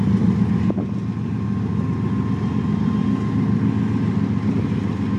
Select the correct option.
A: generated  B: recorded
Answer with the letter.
B